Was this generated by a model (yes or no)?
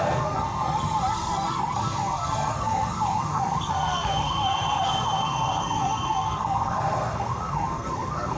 yes